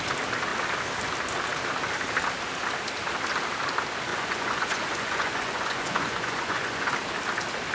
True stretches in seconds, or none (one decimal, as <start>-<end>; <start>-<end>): 0.0-4.1; 6.9-7.7